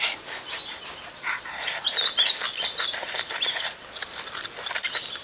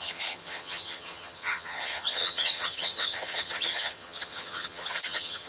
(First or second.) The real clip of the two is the first